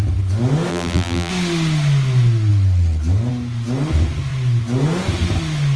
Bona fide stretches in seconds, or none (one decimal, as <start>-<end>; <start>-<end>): 0.0-0.7; 1.3-5.8

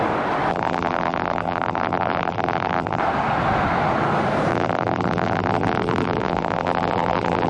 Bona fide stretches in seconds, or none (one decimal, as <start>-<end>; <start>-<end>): 0.0-0.5; 3.0-4.5

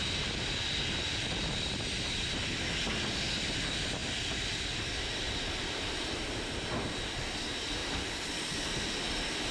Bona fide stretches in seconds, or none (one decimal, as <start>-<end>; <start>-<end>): 0.0-4.0; 5.0-9.5

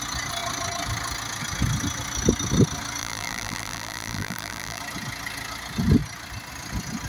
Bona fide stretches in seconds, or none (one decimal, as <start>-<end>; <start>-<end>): 0.0-3.0; 4.8-7.1

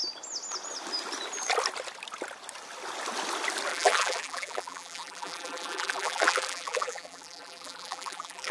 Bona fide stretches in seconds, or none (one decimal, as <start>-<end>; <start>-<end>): 0.0-3.7

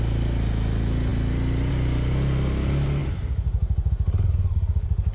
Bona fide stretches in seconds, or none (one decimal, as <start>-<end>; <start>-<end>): 0.0-3.0; 3.9-5.1

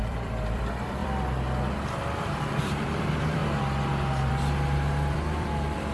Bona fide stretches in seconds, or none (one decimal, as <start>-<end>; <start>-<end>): 3.4-4.3

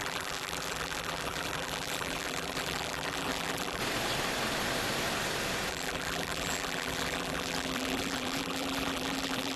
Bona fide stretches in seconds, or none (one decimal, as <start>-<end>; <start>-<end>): 3.8-5.7